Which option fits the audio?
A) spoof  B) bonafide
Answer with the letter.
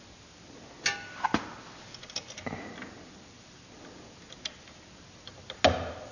B